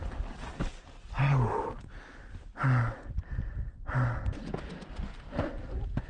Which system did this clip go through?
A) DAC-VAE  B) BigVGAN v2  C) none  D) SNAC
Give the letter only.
C